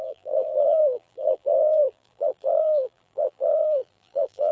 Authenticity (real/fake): fake